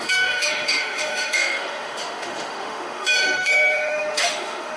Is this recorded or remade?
remade